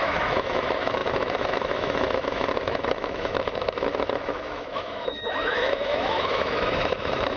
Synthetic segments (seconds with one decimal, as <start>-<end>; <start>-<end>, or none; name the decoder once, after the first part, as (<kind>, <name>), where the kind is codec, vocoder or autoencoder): 0.0-7.4 (autoencoder, DAC-VAE)